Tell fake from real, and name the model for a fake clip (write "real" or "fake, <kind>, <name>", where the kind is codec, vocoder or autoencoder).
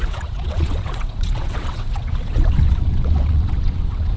fake, vocoder, WaveNeXt